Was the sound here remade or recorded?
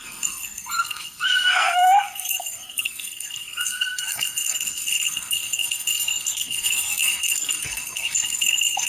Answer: remade